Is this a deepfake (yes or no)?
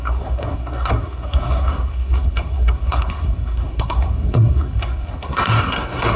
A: yes